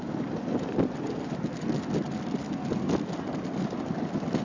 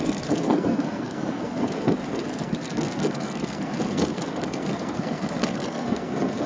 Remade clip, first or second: second